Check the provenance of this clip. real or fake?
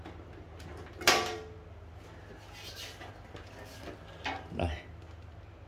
real